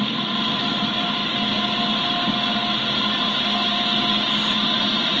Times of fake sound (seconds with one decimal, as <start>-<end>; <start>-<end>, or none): none